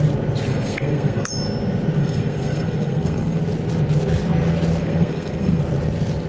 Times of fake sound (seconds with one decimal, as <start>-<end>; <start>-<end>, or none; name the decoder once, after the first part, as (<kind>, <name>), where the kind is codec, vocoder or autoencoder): 0.5-1.3 (codec, SNAC); 2.0-3.4; 4.8-5.6